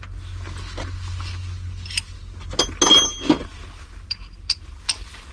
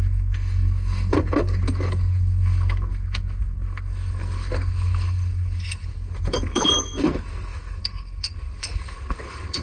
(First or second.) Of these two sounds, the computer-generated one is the second